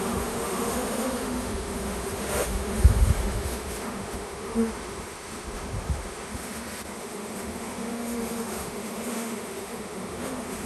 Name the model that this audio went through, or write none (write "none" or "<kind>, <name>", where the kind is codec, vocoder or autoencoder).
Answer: autoencoder, DAC-VAE